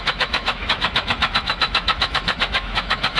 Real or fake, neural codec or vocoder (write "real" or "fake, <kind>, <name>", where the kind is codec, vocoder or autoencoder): fake, autoencoder, DAC-VAE